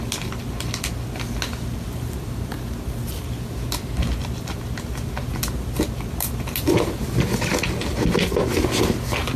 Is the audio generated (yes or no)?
no